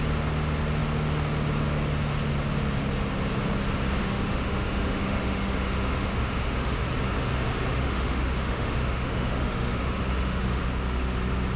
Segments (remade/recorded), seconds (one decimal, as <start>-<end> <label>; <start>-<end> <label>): 0.0-4.0 recorded; 4.0-6.9 remade; 6.9-7.7 recorded; 7.7-10.6 remade; 10.6-11.6 recorded